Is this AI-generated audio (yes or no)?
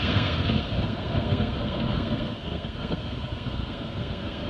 yes